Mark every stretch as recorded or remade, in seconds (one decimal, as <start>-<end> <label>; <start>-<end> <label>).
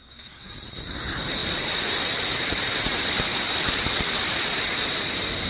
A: 0.0-0.5 remade; 0.5-5.5 recorded